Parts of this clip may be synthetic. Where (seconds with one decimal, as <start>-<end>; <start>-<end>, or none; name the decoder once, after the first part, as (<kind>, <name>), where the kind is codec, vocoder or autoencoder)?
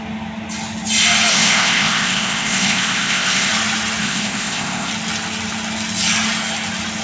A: 1.3-3.5 (codec, ZipCodec); 4.0-4.9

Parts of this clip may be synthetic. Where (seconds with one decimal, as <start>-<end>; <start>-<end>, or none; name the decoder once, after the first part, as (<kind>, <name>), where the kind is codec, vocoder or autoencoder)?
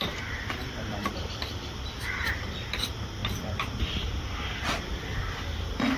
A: 0.0-5.2 (vocoder, BigVGAN v2)